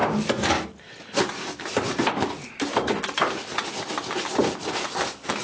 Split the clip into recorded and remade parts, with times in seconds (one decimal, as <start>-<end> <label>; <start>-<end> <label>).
0.0-5.4 recorded